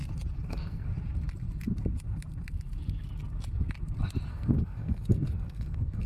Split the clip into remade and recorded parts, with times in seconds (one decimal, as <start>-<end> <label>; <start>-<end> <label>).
0.0-0.5 recorded; 0.5-0.9 remade; 0.9-4.3 recorded; 4.3-6.1 remade